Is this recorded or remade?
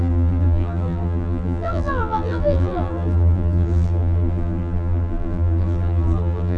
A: remade